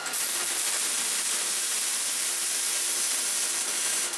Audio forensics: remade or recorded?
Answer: recorded